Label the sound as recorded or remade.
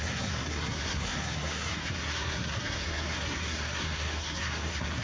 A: remade